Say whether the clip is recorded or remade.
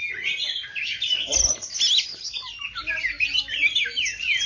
recorded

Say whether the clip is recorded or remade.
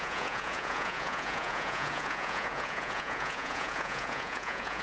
remade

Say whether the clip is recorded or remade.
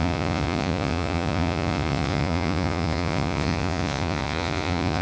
remade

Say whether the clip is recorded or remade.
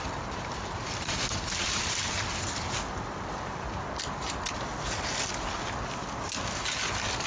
recorded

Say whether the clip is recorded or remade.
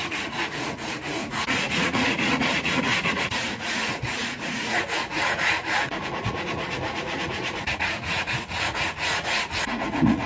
remade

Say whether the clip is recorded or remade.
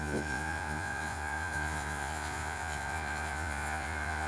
remade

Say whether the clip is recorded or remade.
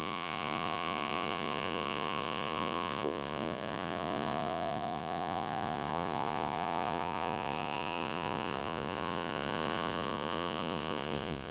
remade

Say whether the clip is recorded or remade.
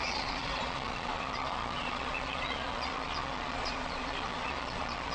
remade